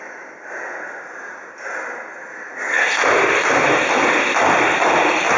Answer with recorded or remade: recorded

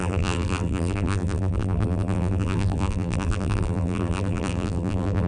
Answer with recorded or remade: remade